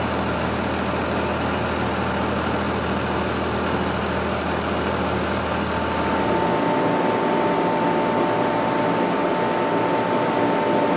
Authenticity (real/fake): real